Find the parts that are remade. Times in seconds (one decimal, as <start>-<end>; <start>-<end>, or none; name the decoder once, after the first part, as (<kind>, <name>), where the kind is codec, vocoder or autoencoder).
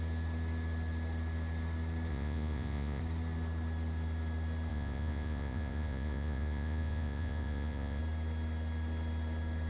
2.1-3.0 (vocoder, Vocos); 4.7-8.0